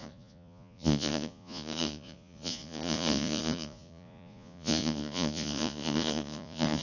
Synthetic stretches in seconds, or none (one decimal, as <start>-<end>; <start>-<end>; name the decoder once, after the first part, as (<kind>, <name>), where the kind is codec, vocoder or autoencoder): 0.0-6.8 (vocoder, Vocos)